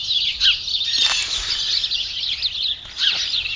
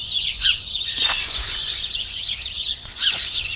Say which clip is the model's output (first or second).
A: second